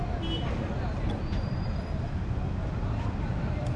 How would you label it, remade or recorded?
recorded